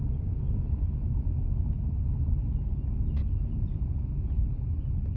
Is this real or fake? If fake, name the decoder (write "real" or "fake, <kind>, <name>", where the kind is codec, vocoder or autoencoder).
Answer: real